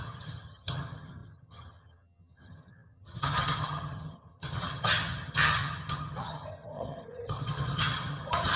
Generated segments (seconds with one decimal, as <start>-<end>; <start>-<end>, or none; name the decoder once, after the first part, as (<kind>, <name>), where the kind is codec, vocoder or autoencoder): 0.0-8.6 (vocoder, HiFi-GAN)